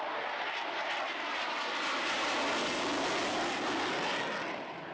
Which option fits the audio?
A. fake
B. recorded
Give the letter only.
B